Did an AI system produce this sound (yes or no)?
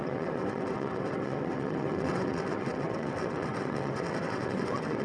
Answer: yes